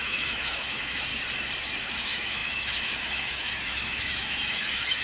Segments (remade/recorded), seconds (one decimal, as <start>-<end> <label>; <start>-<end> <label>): 0.0-1.1 remade; 1.1-2.0 recorded; 2.0-5.0 remade